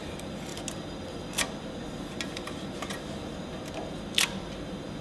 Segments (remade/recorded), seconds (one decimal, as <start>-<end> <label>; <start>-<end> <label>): 0.0-5.0 recorded